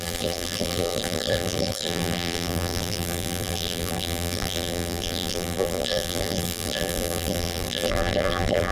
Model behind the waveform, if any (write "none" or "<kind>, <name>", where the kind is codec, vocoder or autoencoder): vocoder, BigVGAN v2